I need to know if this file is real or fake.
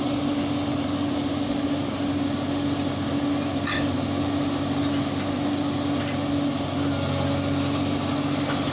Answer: real